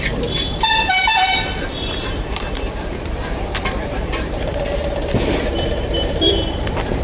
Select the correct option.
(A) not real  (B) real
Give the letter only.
A